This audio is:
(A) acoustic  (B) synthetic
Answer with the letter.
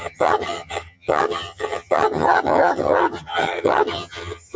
B